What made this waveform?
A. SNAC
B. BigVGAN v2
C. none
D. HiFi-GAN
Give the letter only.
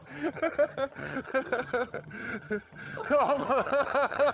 D